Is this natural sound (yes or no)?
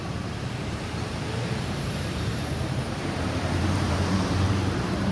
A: no